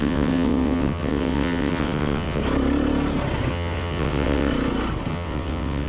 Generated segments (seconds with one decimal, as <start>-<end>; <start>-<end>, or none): 0.0-2.4; 3.5-4.5; 5.1-5.9